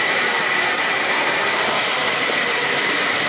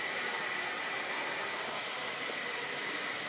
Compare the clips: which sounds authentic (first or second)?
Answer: second